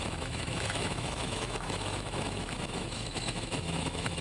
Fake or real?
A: fake